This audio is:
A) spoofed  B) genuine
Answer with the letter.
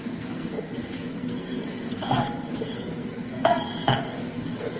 A